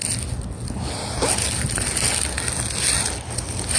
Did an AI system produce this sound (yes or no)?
no